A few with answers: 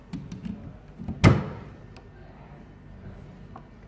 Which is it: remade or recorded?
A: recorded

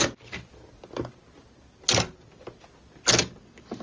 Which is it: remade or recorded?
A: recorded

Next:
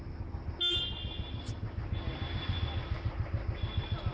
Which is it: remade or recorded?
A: recorded